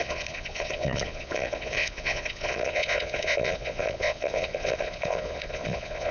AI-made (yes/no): yes